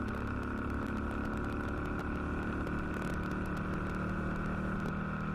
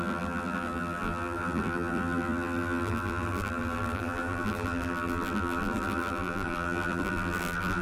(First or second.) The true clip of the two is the first